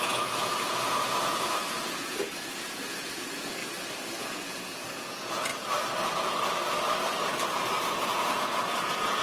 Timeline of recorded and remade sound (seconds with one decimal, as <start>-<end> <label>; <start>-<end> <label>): 0.0-3.6 remade; 3.6-4.2 recorded; 4.2-5.5 remade; 5.5-7.8 recorded; 7.8-9.2 remade